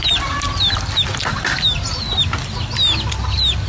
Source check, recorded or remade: recorded